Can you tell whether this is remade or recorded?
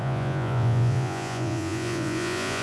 remade